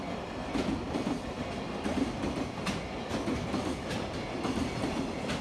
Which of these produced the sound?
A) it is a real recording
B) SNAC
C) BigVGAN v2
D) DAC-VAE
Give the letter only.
A